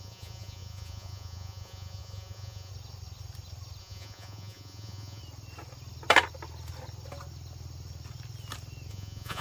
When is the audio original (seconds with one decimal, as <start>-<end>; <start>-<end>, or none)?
2.7-3.8; 5.2-8.9